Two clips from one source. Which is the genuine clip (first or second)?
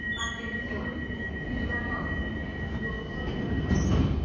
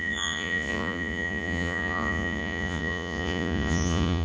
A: first